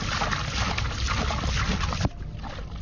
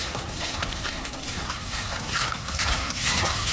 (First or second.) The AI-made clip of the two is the second